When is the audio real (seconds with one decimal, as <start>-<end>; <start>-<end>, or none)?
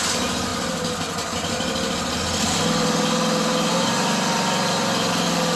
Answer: 0.0-5.6